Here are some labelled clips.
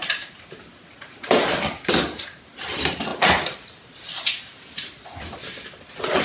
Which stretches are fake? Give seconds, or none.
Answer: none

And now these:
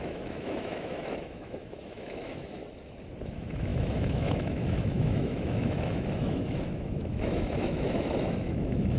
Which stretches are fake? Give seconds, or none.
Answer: 0.0-2.6 (autoencoder, DAC-VAE); 3.2-9.0